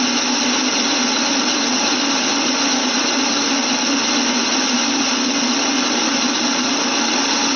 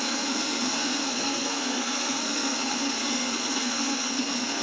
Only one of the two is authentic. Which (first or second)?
first